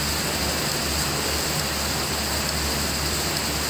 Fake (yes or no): no